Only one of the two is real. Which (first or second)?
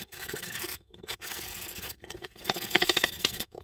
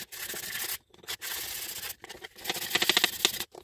second